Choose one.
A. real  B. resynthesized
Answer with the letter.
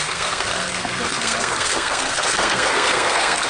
B